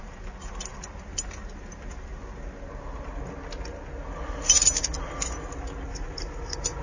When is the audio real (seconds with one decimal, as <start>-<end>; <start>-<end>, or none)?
0.0-6.8

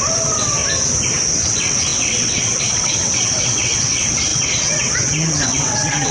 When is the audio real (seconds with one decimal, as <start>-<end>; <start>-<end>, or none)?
0.6-1.3